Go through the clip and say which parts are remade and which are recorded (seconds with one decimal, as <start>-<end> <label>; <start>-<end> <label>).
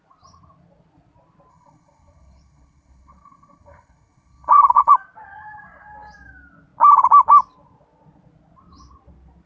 0.0-1.5 recorded; 1.5-4.9 remade; 4.9-9.5 recorded